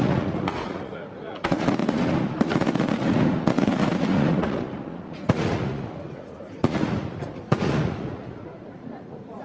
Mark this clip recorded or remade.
remade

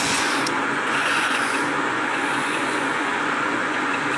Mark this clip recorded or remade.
remade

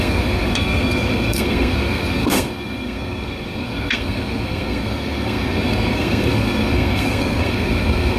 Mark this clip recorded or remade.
remade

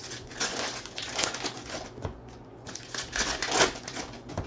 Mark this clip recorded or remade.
remade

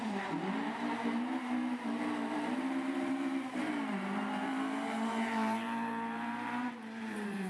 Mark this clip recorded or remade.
remade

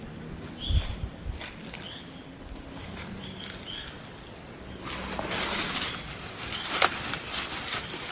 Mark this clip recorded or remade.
recorded